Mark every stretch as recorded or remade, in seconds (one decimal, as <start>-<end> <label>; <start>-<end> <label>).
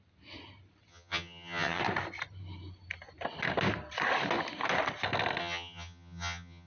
0.0-0.9 recorded; 0.9-1.8 remade; 1.8-5.4 recorded; 5.4-6.7 remade